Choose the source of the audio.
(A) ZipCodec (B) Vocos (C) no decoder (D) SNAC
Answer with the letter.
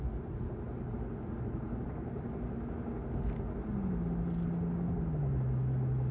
C